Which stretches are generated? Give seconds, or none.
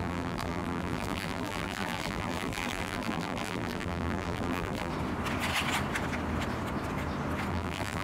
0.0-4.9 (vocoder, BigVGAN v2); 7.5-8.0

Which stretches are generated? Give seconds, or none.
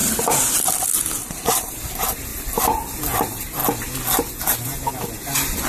0.0-0.5 (vocoder, BigVGAN v2); 1.2-1.8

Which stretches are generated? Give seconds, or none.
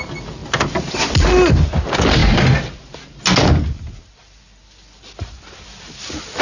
none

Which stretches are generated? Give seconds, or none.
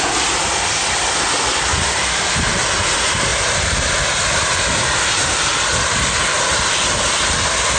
1.7-2.3 (vocoder, BigVGAN v2); 3.3-3.9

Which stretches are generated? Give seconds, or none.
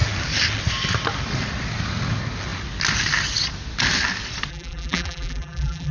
4.5-5.9 (vocoder, BigVGAN v2)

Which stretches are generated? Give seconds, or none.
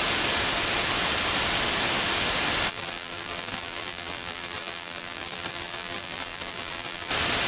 2.7-7.1 (vocoder, BigVGAN v2)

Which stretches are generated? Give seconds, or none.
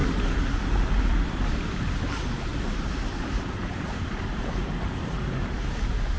2.5-6.2 (vocoder, BigVGAN v2)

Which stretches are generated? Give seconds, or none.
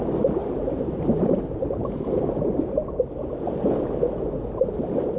0.4-3.5 (vocoder, BigVGAN v2)